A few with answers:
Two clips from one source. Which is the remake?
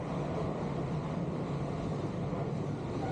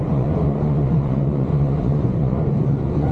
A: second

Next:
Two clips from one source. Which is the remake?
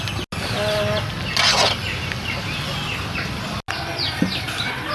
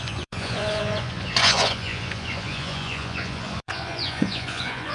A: second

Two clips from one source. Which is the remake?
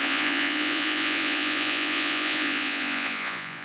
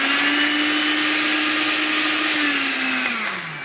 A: first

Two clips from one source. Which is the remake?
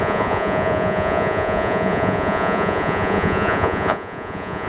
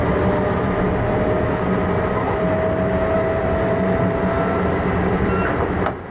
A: first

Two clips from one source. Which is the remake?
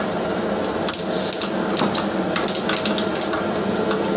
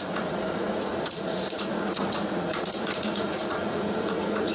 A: second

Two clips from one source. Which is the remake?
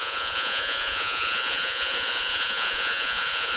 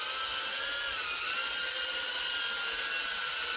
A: first